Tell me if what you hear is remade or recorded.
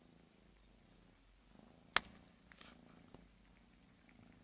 recorded